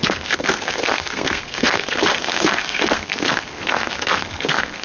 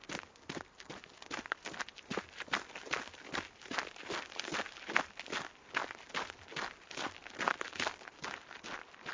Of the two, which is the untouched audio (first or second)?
second